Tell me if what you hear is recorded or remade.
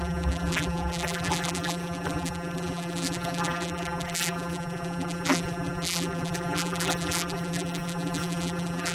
remade